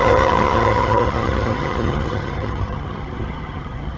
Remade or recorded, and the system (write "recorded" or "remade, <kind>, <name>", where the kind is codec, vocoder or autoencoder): remade, vocoder, HiFi-GAN